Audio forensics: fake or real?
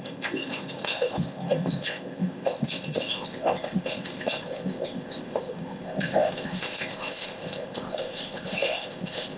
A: fake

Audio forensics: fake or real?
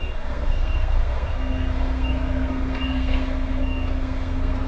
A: fake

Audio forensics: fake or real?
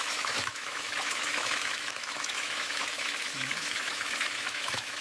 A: fake